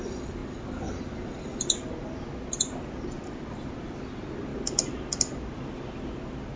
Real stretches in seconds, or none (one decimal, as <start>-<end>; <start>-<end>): 0.0-6.6